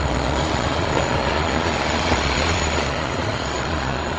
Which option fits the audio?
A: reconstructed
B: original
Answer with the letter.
A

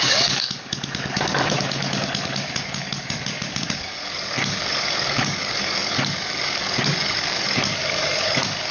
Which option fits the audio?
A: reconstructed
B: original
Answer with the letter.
A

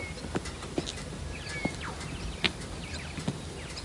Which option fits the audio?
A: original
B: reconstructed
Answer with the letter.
A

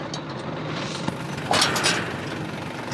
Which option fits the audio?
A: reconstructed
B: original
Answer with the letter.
B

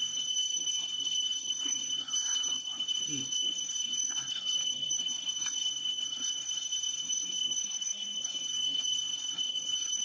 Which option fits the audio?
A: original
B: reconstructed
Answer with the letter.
B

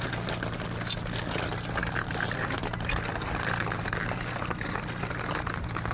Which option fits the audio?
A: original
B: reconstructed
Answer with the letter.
A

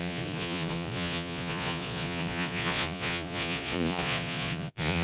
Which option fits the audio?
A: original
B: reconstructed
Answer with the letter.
B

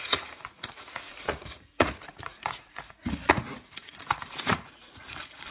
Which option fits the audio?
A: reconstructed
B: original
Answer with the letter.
A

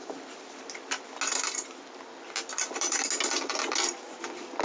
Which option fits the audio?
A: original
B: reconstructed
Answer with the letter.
A